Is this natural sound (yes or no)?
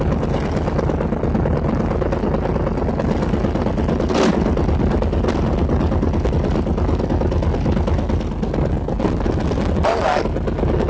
yes